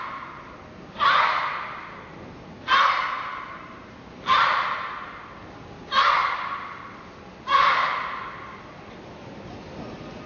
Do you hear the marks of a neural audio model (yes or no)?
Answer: no